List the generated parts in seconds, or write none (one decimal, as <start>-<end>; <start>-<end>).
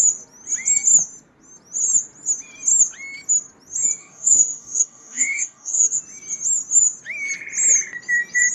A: 4.0-6.0